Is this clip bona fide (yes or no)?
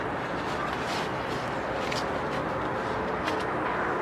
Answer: yes